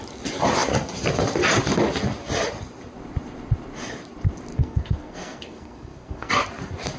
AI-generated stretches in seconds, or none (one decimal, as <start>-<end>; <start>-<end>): 4.5-6.3